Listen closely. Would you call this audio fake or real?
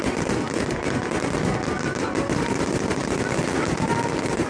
real